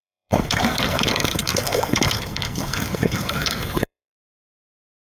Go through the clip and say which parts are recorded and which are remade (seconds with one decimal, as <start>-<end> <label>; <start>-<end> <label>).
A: 0.0-5.1 remade